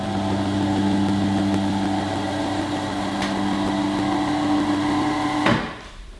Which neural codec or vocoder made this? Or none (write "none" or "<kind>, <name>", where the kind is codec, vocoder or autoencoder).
none